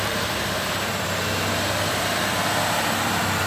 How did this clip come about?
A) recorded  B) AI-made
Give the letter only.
B